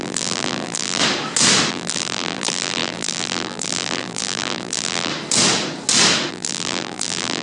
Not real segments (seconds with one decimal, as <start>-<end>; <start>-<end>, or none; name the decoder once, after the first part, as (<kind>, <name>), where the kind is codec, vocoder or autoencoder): 0.0-1.0 (vocoder, BigVGAN v2); 1.7-5.1; 6.3-7.4